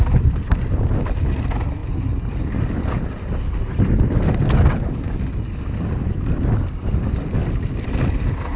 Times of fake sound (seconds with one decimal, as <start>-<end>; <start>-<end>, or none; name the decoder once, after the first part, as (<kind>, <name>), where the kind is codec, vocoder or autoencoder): none